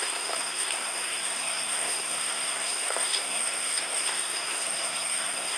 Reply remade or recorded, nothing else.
remade